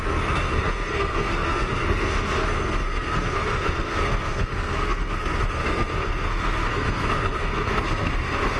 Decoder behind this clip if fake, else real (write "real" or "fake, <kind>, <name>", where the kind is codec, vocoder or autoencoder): fake, codec, SNAC